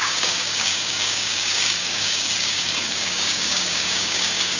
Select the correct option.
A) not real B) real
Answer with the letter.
A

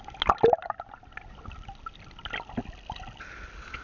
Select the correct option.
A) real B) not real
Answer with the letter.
A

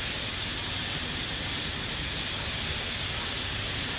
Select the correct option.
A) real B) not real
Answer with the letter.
A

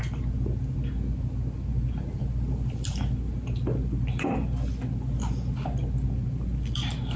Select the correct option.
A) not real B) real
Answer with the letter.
B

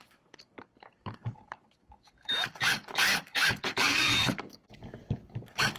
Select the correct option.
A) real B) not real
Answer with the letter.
B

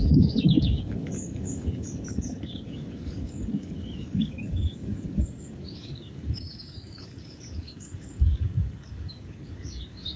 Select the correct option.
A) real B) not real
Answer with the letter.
B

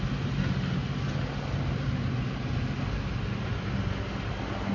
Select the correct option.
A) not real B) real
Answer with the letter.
B